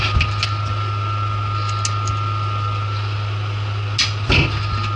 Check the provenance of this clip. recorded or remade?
recorded